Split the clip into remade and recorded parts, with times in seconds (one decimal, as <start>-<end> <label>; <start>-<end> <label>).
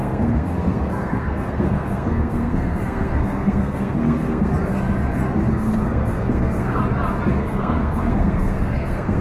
0.0-4.5 remade; 4.5-5.5 recorded; 5.5-6.8 remade; 6.8-7.3 recorded; 7.3-9.2 remade